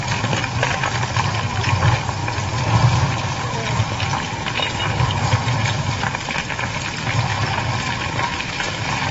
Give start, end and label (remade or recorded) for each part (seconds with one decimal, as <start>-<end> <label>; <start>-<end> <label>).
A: 0.0-2.2 remade; 2.2-3.8 recorded; 3.8-7.3 remade; 7.3-8.2 recorded; 8.2-9.1 remade